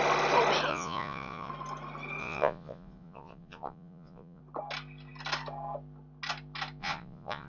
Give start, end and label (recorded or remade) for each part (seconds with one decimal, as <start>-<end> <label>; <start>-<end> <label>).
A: 0.0-0.7 recorded; 0.7-1.5 remade; 1.5-2.2 recorded; 2.2-4.4 remade; 4.4-6.8 recorded; 6.8-7.5 remade